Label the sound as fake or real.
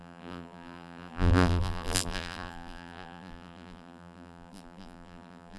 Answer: fake